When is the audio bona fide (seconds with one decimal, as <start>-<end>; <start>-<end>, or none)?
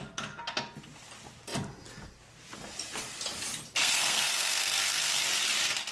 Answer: 0.0-3.8; 5.2-5.9